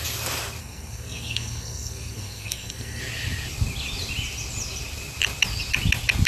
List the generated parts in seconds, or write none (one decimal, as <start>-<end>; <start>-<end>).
0.6-3.0